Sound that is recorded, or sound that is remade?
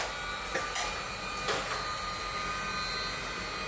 recorded